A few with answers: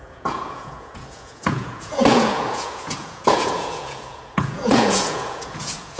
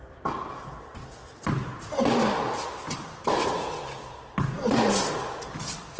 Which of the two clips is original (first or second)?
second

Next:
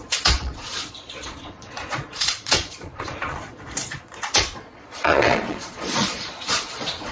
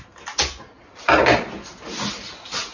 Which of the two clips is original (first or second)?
second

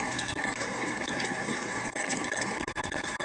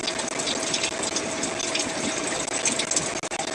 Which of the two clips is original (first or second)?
second